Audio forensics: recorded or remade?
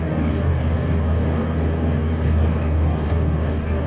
remade